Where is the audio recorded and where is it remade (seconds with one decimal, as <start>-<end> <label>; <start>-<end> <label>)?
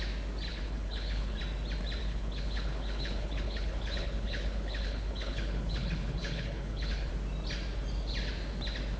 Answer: 0.0-0.5 recorded; 0.5-1.4 remade; 1.4-2.0 recorded; 2.0-7.1 remade; 7.1-9.0 recorded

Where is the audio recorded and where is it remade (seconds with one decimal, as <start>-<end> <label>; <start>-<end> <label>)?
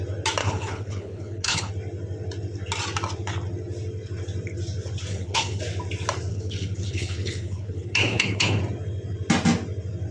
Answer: 0.0-0.4 recorded; 0.4-1.7 remade; 1.7-5.1 recorded; 5.1-5.6 remade; 5.6-6.3 recorded; 6.3-8.6 remade; 8.6-10.1 recorded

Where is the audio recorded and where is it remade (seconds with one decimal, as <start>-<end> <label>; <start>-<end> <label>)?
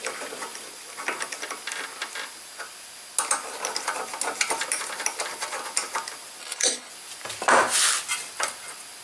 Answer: 0.0-6.4 recorded; 6.4-6.9 remade; 6.9-9.0 recorded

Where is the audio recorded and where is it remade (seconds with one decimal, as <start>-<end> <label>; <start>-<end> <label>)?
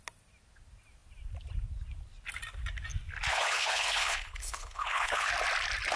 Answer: 0.0-3.3 recorded; 3.3-5.3 remade; 5.3-6.0 recorded